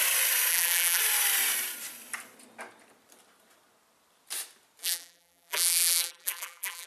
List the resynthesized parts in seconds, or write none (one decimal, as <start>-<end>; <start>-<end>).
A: 0.5-1.0; 4.8-6.9